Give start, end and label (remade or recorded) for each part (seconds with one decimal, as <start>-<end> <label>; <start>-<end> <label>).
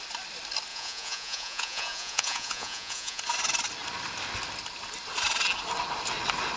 0.0-0.7 recorded; 0.7-3.2 remade; 3.2-6.6 recorded